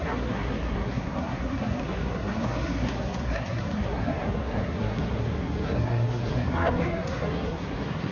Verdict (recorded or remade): remade